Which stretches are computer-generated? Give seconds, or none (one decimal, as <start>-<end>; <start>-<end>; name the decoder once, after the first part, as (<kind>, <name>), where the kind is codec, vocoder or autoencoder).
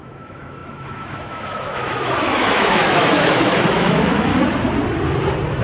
0.0-4.3 (autoencoder, DAC-VAE)